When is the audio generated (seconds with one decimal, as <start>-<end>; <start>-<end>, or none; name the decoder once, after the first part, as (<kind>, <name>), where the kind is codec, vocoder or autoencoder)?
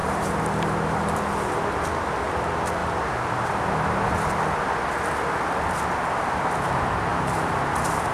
0.0-1.2 (vocoder, BigVGAN v2); 7.1-8.1